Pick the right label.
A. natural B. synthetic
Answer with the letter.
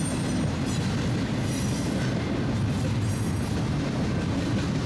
A